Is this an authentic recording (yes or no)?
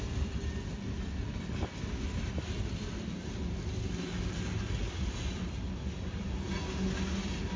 yes